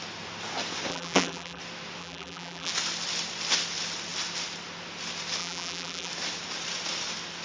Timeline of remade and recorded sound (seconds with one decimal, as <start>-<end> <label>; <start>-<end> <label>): 0.0-0.9 recorded; 0.9-1.6 remade; 1.6-2.0 recorded; 2.0-2.7 remade; 2.7-5.4 recorded; 5.4-6.1 remade; 6.1-7.4 recorded